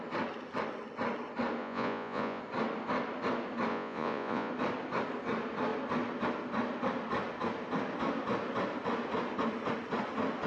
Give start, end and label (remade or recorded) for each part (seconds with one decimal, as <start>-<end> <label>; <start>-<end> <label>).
0.0-1.6 recorded; 1.6-2.4 remade; 2.4-3.7 recorded; 3.7-4.5 remade; 4.5-10.5 recorded